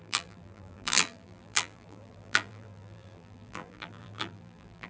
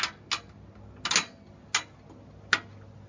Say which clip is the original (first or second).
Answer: second